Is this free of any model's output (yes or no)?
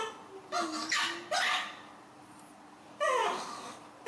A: yes